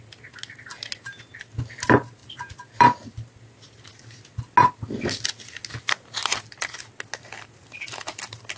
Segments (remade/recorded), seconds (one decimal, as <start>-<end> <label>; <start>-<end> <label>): 0.0-2.2 recorded; 2.2-3.4 remade; 3.4-6.2 recorded; 6.2-6.8 remade; 6.8-8.6 recorded